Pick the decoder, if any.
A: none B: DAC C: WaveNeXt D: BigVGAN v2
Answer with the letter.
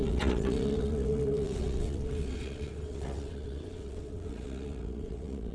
C